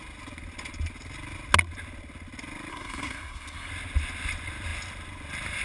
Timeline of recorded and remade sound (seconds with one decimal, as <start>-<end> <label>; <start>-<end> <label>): 0.0-2.7 recorded; 2.7-3.7 remade; 3.7-5.6 recorded